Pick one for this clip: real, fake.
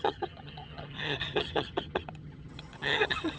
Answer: fake